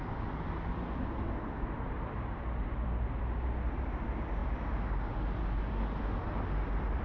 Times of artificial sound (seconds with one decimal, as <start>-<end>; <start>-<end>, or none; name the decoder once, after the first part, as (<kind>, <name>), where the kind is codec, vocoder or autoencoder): none